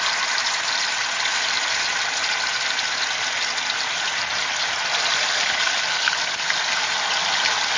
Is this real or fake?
real